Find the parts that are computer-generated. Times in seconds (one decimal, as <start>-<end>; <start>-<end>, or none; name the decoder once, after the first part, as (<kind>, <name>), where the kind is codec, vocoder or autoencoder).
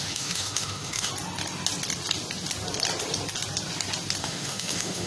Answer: 0.0-1.1 (autoencoder, DAC-VAE); 4.2-5.1